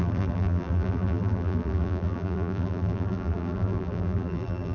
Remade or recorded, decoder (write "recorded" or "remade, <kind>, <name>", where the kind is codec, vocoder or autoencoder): remade, vocoder, BigVGAN v2